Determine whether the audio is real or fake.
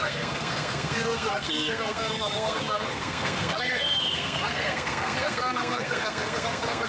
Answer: fake